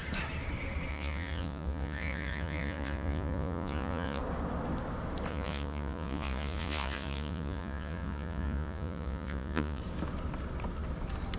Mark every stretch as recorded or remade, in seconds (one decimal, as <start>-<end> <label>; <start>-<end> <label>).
0.0-0.9 recorded; 0.9-4.2 remade; 4.2-5.3 recorded; 5.3-9.8 remade; 9.8-11.4 recorded